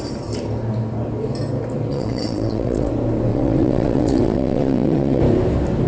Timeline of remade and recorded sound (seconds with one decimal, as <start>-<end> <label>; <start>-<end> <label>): 0.0-1.9 recorded; 1.9-2.9 remade; 2.9-3.3 recorded; 3.3-5.2 remade; 5.2-5.9 recorded